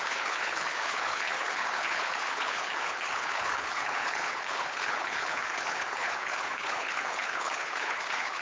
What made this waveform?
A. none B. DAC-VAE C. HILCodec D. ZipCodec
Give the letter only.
C